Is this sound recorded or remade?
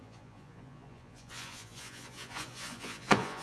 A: remade